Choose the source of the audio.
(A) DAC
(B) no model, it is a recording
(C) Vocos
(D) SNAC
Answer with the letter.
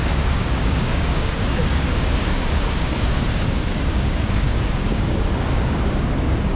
A